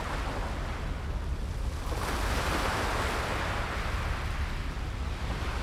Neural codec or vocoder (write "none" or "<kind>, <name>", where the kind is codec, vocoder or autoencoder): none